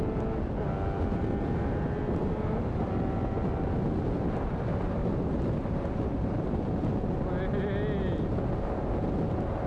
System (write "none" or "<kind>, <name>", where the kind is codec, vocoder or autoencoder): none